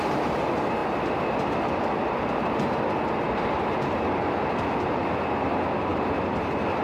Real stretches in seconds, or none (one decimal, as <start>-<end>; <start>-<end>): 0.0-5.9